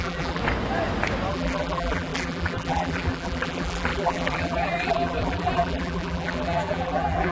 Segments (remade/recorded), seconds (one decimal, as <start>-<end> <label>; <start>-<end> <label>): 0.0-0.4 remade; 0.4-1.3 recorded; 1.3-7.3 remade